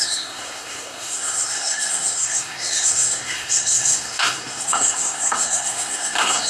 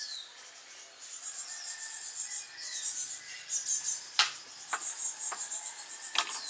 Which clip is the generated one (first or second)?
first